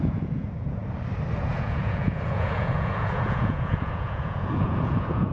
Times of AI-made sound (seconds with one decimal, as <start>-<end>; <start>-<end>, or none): 0.0-0.8; 1.4-5.3